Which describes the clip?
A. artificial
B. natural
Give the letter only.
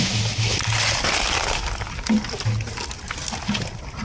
B